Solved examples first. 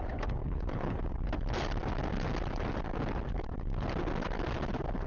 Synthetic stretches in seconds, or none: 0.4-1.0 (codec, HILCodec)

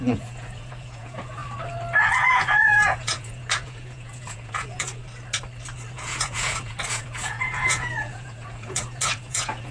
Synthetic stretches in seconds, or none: 0.0-1.4 (vocoder, Vocos); 2.1-5.0; 5.9-9.7